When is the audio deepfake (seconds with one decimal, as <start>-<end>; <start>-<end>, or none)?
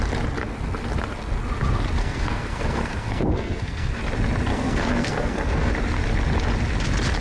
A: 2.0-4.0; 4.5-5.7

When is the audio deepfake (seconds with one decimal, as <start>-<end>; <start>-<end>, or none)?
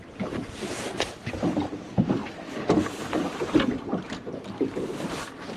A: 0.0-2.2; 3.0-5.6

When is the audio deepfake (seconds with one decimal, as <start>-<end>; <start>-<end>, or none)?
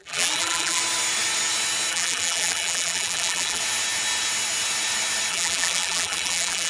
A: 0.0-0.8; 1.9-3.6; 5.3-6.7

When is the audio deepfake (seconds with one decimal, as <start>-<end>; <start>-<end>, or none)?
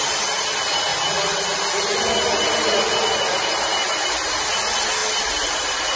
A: none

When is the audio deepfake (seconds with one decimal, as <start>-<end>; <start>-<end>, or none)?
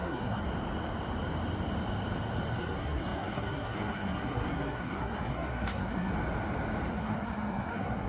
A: 0.0-0.4; 2.6-6.1; 6.9-8.1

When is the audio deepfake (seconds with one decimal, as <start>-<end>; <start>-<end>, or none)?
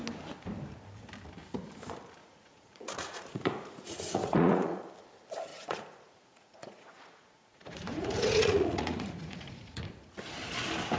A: 2.2-4.8; 5.5-10.2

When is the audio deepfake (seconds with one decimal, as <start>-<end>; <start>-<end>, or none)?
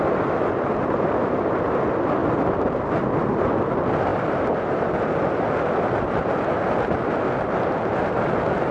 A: none